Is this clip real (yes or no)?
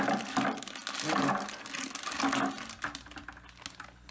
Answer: yes